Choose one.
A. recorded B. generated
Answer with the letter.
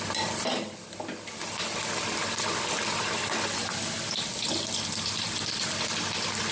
A